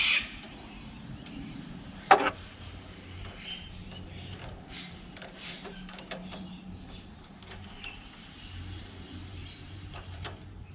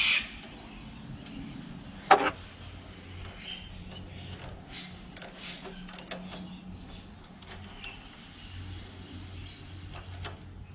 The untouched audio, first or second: second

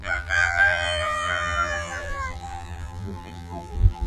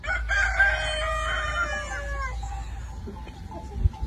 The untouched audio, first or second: second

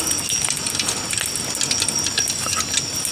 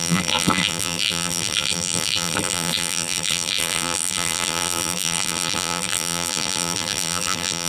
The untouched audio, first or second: first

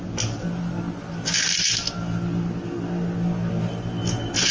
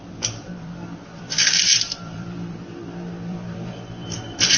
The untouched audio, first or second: first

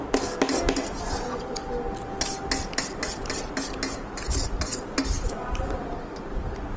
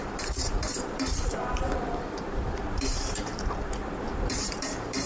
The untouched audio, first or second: first